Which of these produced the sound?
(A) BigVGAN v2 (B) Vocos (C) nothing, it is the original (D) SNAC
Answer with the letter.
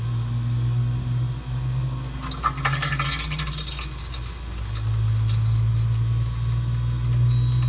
C